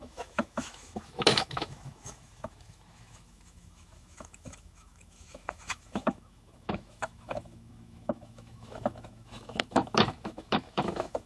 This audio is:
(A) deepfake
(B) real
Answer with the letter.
A